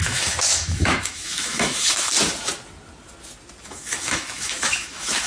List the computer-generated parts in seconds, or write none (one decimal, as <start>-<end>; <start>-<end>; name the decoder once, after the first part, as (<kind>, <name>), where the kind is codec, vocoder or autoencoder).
0.0-2.1 (autoencoder, DAC-VAE); 3.6-5.3